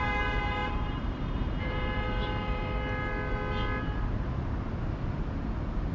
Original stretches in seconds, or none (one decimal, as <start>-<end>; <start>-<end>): 2.6-5.4